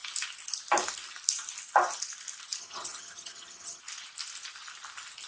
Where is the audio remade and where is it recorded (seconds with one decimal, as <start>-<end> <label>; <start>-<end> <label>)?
0.0-2.6 recorded; 2.6-3.8 remade; 3.8-5.3 recorded

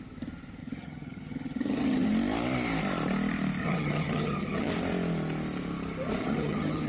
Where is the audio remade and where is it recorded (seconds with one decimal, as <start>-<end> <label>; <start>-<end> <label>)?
0.0-0.6 recorded; 0.6-2.1 remade; 2.1-3.6 recorded; 3.6-4.7 remade; 4.7-6.2 recorded; 6.2-6.9 remade